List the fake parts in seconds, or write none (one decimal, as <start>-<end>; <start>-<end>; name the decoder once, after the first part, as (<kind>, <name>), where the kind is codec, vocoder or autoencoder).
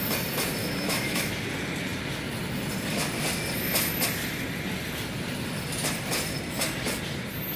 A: 0.6-1.3 (autoencoder, DAC-VAE)